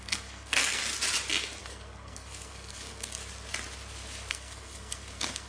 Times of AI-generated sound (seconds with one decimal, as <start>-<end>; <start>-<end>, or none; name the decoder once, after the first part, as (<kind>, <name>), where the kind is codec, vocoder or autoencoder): 0.0-0.8 (codec, SNAC); 1.6-3.2; 4.3-5.5